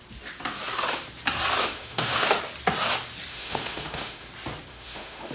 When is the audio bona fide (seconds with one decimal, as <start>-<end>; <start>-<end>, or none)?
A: 0.0-1.6; 2.4-3.3; 4.3-4.7

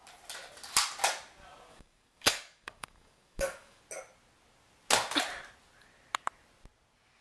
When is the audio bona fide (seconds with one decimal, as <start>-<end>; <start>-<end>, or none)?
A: 0.0-1.7; 3.8-7.2

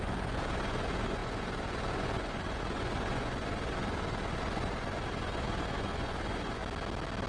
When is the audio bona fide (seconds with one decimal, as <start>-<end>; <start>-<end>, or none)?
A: 6.6-7.3

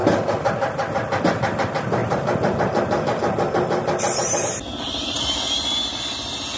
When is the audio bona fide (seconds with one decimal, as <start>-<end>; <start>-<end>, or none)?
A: 0.0-6.6

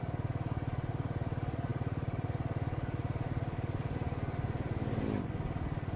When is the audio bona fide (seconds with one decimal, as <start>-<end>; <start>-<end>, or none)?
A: 0.0-6.0

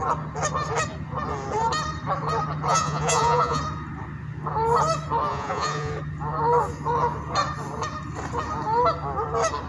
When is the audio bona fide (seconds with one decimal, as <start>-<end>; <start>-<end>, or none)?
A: 0.0-2.7; 3.6-5.3; 5.9-9.7